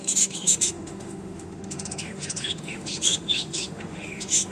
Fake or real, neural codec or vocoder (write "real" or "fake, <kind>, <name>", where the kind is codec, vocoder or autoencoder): fake, autoencoder, DAC-VAE